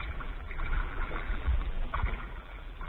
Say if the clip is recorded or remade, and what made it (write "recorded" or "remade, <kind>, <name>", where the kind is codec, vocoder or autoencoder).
remade, vocoder, BigVGAN v2